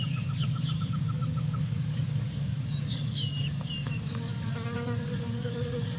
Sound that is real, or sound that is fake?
fake